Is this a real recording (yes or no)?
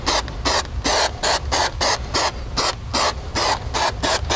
yes